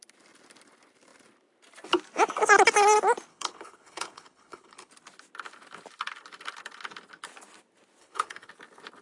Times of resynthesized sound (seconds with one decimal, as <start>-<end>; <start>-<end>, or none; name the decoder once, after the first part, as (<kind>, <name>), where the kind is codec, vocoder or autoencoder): 3.3-4.9 (codec, HILCodec); 8.0-8.5